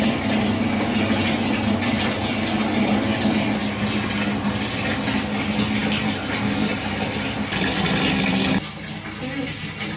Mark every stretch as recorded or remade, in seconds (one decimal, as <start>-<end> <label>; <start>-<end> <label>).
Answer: 0.0-10.0 recorded